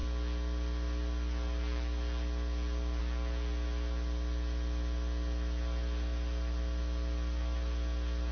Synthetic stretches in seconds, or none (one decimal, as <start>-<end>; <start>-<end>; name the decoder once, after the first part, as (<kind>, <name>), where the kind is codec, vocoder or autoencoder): none